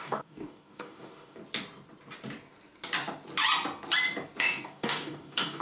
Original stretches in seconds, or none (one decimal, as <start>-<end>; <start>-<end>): 1.4-4.4